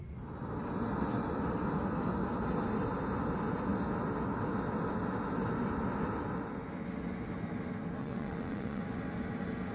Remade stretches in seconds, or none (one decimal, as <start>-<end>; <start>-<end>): 8.0-8.8